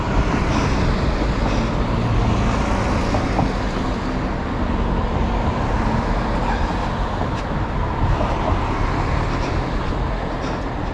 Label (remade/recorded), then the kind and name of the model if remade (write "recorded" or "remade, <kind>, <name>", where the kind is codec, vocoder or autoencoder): recorded